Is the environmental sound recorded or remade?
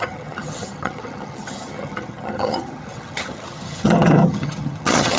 remade